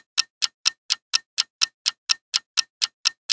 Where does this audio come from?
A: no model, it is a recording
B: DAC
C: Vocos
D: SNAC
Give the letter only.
A